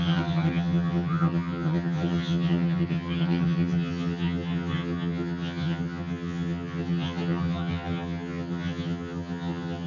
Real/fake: fake